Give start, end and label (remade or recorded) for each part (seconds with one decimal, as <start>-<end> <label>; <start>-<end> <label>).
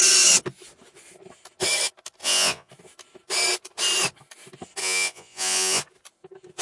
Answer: 0.0-2.2 recorded; 2.2-2.7 remade; 2.7-4.8 recorded; 4.8-5.8 remade; 5.8-6.6 recorded